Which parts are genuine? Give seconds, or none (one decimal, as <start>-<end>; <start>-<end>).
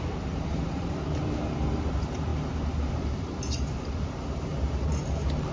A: none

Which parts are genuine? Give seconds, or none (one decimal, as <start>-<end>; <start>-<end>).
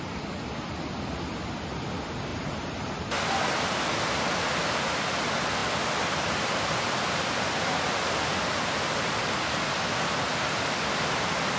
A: 0.0-2.3; 3.0-11.6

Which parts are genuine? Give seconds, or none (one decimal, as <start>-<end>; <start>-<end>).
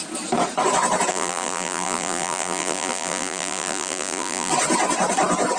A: 0.0-1.1; 4.5-5.6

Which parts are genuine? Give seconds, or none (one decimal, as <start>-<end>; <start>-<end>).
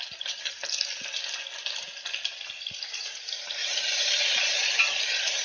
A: 0.6-2.4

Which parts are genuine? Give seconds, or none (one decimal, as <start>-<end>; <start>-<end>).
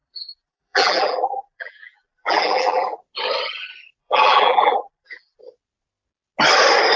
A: 3.0-4.0; 5.4-7.0